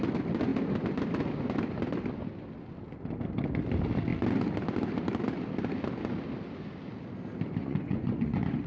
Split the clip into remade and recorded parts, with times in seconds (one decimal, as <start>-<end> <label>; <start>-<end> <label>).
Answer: 0.0-7.6 recorded; 7.6-8.7 remade